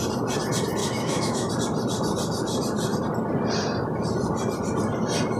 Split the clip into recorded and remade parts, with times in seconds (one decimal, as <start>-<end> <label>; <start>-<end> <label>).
0.0-0.8 recorded; 0.8-1.5 remade; 1.5-5.4 recorded